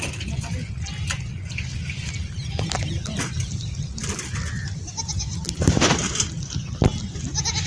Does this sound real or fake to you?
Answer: real